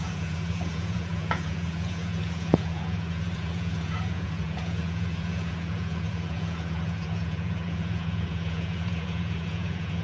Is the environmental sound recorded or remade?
remade